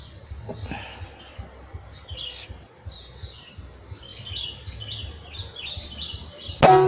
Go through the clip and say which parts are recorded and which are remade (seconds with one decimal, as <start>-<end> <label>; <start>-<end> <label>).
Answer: 0.0-6.9 recorded